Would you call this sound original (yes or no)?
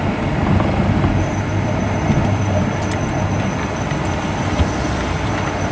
yes